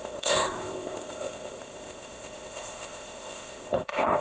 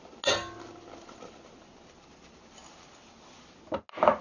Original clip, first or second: second